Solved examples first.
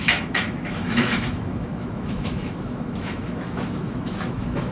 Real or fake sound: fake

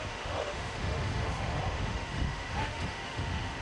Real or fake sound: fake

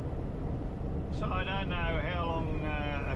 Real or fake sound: real